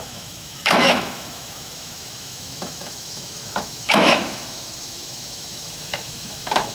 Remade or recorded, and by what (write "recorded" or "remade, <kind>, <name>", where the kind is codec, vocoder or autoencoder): remade, autoencoder, DAC-VAE